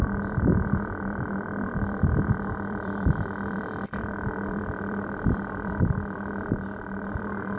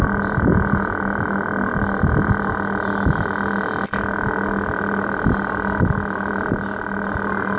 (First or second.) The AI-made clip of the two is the first